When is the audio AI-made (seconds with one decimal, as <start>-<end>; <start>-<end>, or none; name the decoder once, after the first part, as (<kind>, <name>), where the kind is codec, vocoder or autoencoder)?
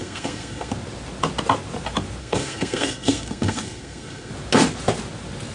0.0-0.7 (codec, SNAC); 2.2-4.3